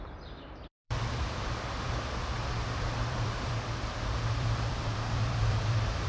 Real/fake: fake